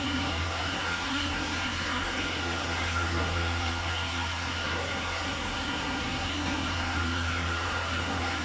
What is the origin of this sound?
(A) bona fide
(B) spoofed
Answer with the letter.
B